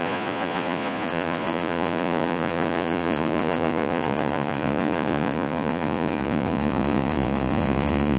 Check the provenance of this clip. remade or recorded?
remade